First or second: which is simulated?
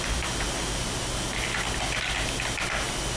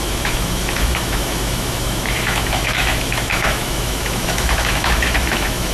second